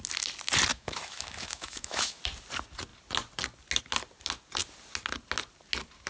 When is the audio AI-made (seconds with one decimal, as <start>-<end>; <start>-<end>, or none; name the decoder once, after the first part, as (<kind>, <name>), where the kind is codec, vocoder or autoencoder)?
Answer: 0.7-2.2 (autoencoder, DAC-VAE)